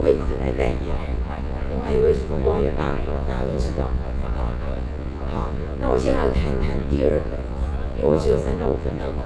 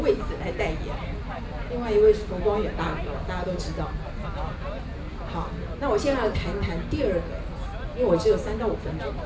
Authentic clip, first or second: second